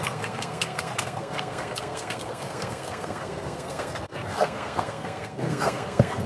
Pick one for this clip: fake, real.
fake